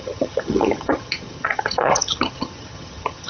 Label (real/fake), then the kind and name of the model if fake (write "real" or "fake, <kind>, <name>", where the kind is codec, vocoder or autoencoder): fake, vocoder, HiFi-GAN